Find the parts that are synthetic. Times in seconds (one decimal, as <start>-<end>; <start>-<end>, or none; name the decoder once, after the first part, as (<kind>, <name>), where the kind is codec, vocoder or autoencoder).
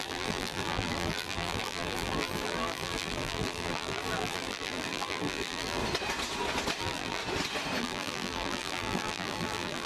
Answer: 0.0-5.8 (vocoder, BigVGAN v2); 6.8-7.2; 7.8-9.9